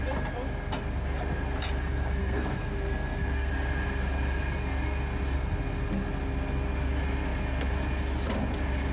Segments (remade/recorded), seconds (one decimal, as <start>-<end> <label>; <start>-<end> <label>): 0.0-2.2 recorded; 2.2-3.5 remade; 3.5-8.9 recorded